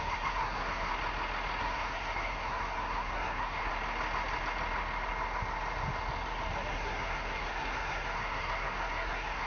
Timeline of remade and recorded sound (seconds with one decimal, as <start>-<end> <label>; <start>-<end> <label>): 0.0-0.9 remade; 0.9-1.6 recorded; 1.6-3.7 remade; 3.7-6.7 recorded; 6.7-9.5 remade